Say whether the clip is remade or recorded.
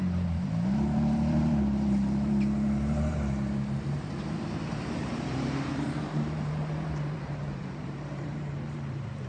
remade